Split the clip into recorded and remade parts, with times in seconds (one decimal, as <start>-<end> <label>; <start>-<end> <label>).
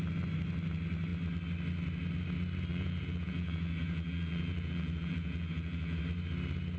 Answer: 0.0-2.7 recorded; 2.7-6.0 remade; 6.0-6.8 recorded